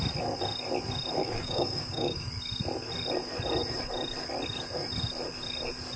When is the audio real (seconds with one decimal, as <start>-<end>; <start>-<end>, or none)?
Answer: 0.0-1.2; 2.3-6.0

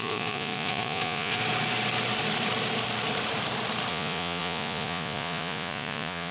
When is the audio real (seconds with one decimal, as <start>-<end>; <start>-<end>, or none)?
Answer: 1.4-3.9

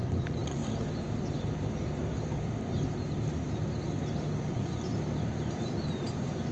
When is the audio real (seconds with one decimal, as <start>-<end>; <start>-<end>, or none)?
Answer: 0.6-4.5; 4.9-6.1

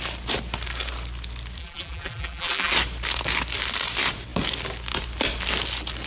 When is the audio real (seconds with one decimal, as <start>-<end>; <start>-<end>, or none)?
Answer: 0.0-1.6; 2.7-6.1

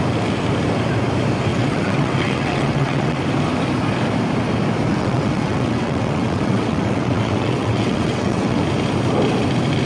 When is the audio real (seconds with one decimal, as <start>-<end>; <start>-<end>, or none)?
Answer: 0.0-1.5; 3.2-4.9; 8.6-9.9

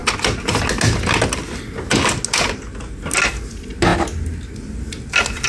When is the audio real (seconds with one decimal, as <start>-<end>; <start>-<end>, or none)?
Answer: 0.0-5.5